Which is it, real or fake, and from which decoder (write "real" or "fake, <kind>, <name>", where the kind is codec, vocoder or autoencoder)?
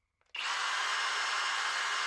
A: real